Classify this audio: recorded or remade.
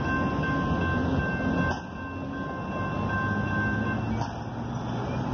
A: recorded